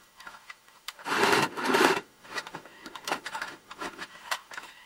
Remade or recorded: remade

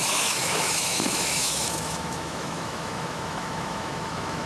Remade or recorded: remade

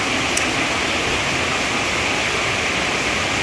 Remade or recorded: recorded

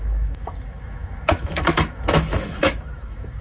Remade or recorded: remade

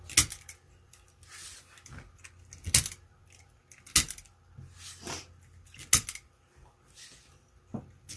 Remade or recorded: recorded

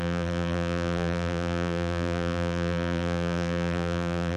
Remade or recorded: remade